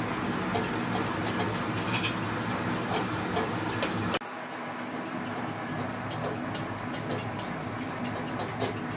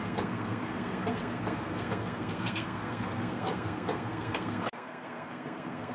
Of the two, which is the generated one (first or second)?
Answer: second